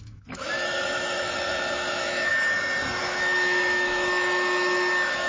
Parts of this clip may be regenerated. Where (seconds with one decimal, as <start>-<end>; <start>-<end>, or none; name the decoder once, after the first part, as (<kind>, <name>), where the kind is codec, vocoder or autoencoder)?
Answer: 0.0-2.3 (autoencoder, DAC-VAE); 3.0-5.3